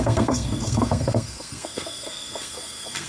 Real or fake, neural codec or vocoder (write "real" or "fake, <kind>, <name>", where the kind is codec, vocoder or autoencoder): fake, codec, SNAC